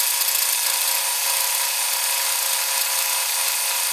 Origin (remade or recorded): recorded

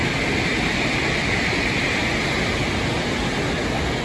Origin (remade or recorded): recorded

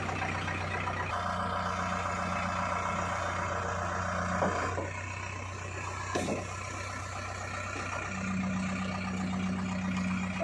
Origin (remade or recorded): recorded